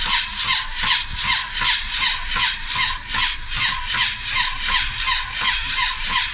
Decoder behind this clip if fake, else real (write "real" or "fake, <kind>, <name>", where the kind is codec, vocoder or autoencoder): real